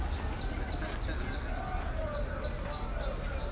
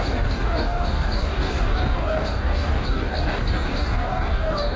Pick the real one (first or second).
first